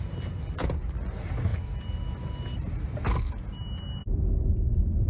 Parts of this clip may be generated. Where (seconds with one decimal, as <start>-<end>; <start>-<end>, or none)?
1.5-3.0; 4.0-5.1